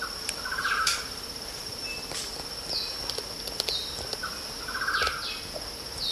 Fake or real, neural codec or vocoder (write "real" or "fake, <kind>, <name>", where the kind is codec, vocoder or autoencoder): real